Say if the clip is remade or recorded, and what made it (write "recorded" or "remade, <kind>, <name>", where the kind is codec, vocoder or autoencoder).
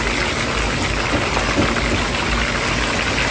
recorded